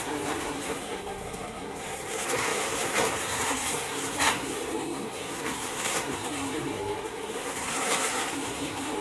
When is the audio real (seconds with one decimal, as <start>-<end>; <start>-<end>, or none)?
none